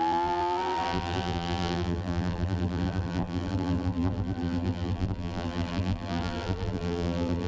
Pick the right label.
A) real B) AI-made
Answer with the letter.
B